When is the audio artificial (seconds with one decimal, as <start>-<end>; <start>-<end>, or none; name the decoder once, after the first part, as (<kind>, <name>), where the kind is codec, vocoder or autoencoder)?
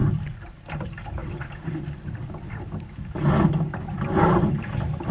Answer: 0.7-1.2 (vocoder, BigVGAN v2); 4.3-5.1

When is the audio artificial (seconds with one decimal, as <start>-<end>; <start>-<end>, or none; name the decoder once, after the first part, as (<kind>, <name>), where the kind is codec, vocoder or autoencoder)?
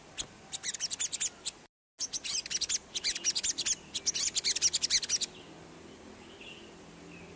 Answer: none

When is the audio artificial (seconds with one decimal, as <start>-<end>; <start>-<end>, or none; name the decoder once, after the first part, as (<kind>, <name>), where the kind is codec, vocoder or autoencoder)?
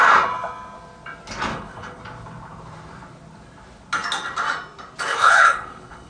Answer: 1.5-2.0 (codec, HILCodec); 5.1-6.1